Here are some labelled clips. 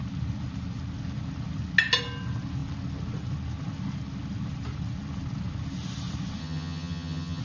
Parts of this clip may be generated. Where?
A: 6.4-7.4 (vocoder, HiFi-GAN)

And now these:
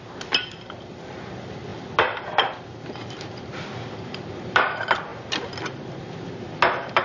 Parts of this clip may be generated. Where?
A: 0.0-1.7 (vocoder, BigVGAN v2); 3.6-7.0

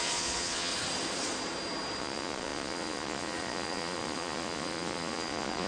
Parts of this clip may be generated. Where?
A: 0.0-0.7 (vocoder, Vocos); 2.0-5.7